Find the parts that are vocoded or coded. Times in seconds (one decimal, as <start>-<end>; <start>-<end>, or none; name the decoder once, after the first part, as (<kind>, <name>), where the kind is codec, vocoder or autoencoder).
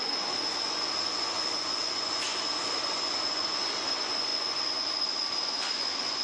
0.0-6.2 (vocoder, Vocos)